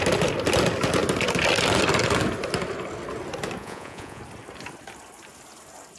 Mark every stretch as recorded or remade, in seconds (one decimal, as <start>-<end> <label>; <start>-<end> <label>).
0.0-3.6 recorded; 3.6-4.2 remade; 4.2-6.0 recorded